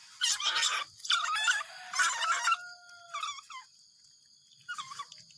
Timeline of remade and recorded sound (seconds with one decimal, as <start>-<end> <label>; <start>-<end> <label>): 0.0-5.4 recorded